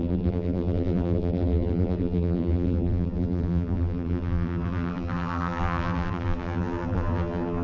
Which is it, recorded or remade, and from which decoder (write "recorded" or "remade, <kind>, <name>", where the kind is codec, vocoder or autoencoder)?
remade, vocoder, BigVGAN v2